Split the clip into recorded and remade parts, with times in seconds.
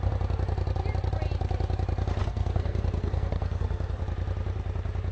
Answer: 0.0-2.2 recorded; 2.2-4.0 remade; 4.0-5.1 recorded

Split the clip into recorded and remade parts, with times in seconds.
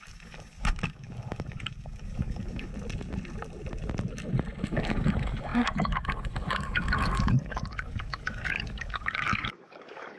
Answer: 0.0-2.7 remade; 2.7-4.7 recorded; 4.7-10.2 remade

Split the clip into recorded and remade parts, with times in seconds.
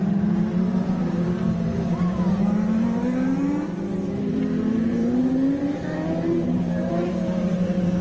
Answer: 0.0-8.0 remade